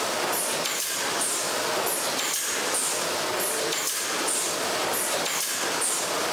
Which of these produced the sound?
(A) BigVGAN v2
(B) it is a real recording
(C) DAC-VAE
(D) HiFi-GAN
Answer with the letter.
B